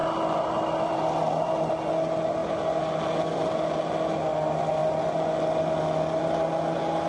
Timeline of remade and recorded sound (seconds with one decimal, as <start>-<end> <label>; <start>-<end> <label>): 0.0-7.1 recorded